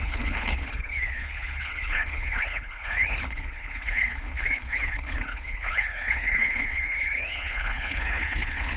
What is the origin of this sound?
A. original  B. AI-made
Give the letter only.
B